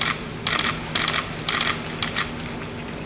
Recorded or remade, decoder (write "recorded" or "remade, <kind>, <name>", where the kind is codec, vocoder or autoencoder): recorded